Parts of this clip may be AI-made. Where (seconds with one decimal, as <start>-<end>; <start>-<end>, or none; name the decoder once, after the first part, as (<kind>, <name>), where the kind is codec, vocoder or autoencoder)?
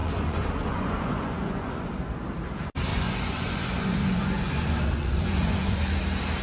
0.0-1.9 (vocoder, Vocos); 2.9-5.8